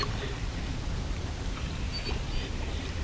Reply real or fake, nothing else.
real